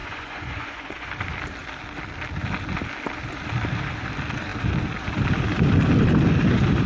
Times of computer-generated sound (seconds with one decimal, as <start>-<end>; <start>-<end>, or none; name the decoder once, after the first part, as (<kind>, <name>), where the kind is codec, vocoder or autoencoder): 0.0-1.1 (vocoder, Vocos)